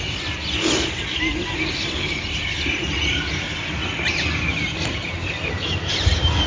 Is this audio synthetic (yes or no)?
no